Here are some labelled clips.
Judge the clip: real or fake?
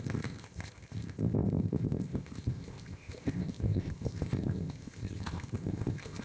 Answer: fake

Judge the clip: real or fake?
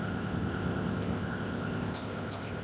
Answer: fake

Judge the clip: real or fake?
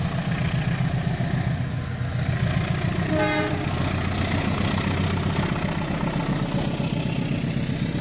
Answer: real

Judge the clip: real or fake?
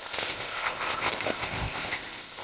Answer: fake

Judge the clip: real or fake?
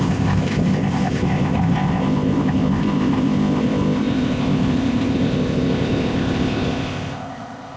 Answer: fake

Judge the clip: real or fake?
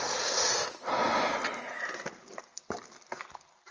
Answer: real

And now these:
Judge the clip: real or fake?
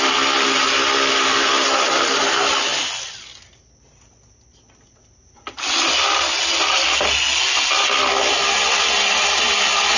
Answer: real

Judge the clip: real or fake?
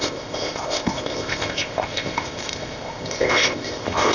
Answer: fake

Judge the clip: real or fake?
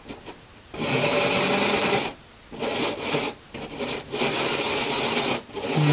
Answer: real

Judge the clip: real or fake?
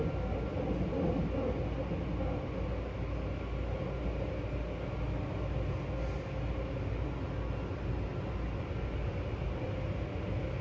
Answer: real